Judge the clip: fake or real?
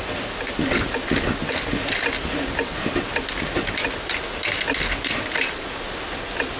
real